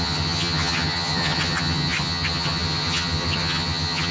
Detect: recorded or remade remade